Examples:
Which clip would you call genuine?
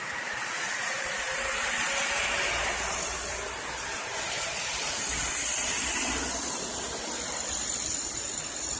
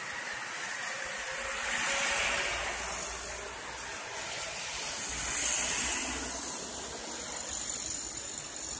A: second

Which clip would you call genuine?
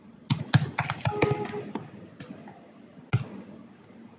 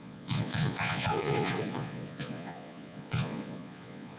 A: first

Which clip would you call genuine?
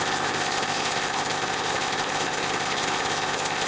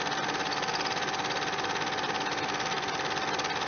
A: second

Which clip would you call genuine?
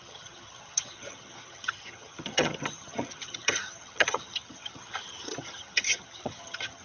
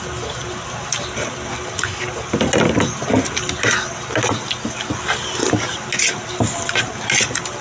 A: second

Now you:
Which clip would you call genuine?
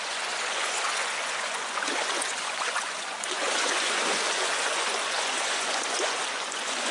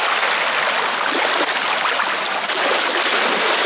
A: second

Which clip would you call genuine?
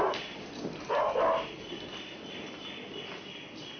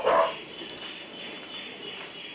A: first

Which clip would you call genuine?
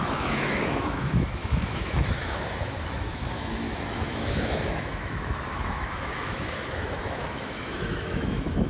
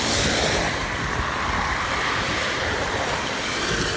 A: second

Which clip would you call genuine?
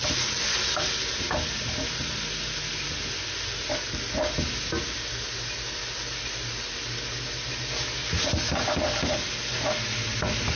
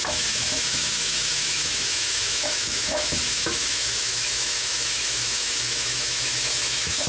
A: first